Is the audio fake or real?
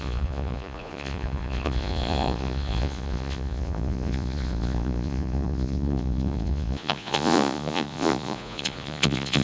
fake